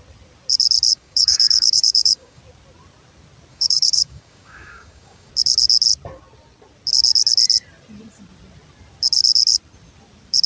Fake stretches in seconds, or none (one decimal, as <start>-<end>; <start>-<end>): 0.9-2.4; 3.5-5.3